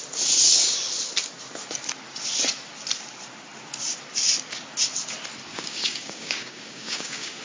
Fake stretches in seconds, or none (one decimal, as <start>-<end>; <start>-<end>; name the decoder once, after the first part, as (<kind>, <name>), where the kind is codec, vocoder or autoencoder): 5.5-7.4 (codec, DAC)